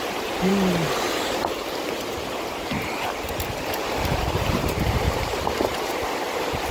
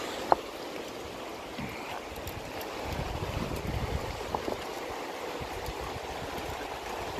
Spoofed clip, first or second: first